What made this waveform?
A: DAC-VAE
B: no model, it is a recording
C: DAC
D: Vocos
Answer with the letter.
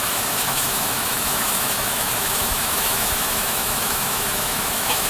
A